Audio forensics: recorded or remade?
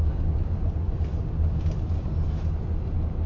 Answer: recorded